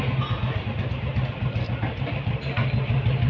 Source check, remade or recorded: recorded